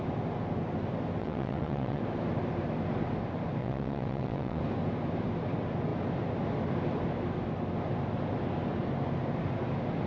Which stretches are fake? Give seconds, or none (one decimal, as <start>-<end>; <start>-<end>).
1.2-2.0; 3.6-4.6